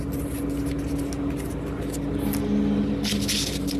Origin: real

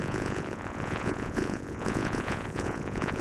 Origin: fake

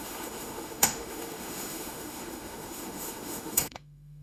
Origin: fake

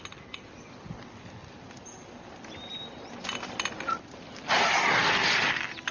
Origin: real